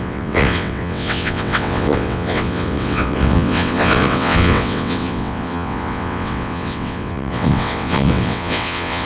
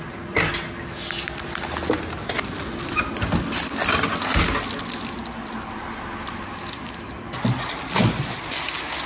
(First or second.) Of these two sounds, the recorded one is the second